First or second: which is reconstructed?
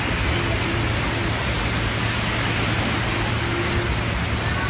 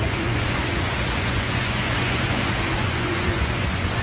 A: second